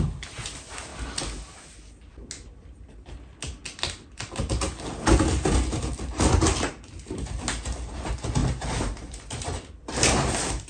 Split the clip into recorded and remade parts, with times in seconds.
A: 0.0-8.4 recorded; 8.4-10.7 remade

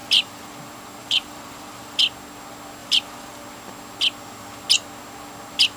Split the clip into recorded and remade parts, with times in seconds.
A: 0.0-0.5 remade; 0.5-1.0 recorded; 1.0-2.0 remade; 2.0-2.8 recorded; 2.8-3.4 remade; 3.4-5.8 recorded

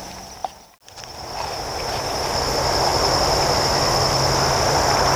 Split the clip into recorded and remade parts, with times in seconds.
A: 0.0-5.2 recorded

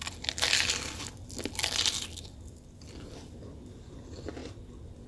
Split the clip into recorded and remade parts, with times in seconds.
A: 0.0-5.1 recorded

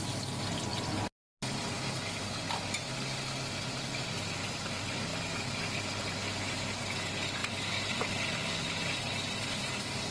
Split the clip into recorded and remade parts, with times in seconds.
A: 0.0-10.1 recorded